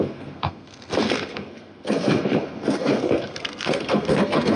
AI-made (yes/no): yes